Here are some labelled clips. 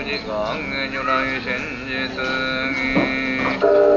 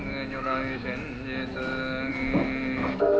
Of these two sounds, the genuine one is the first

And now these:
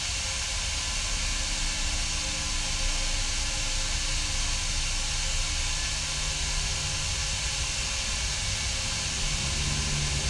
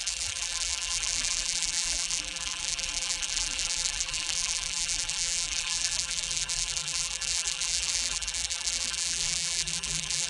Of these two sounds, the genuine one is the first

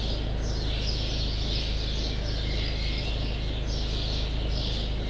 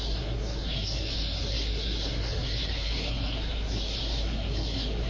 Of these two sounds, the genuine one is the first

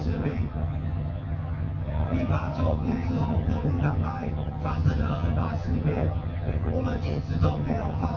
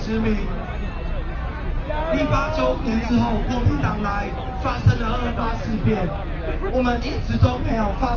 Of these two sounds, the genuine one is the second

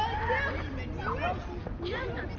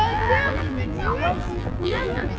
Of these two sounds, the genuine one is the first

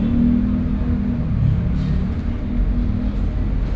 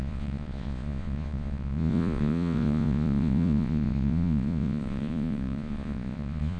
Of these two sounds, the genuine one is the first